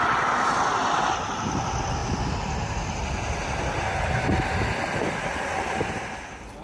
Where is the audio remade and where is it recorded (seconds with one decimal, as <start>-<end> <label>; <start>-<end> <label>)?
0.0-6.6 recorded